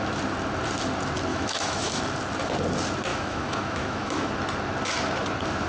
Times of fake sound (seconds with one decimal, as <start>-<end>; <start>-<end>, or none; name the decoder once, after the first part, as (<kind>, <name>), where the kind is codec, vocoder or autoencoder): 1.3-2.0 (autoencoder, DAC-VAE); 3.1-4.3